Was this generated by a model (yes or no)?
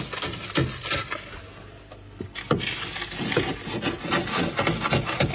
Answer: no